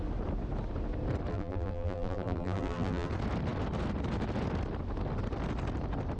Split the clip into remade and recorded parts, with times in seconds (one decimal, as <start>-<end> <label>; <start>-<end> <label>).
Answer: 0.0-1.3 recorded; 1.3-3.1 remade; 3.1-6.2 recorded